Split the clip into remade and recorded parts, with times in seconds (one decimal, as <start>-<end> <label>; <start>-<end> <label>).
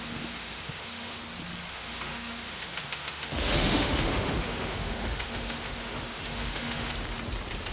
0.0-1.2 remade; 1.2-1.7 recorded; 1.7-6.9 remade; 6.9-7.7 recorded